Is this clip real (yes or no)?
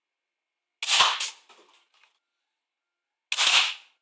yes